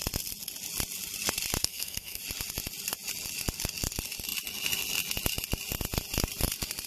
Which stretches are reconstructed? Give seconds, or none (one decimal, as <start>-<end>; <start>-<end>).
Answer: 1.6-2.2